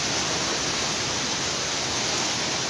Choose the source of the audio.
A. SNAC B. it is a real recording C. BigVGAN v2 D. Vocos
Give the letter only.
B